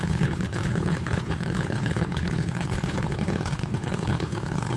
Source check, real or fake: fake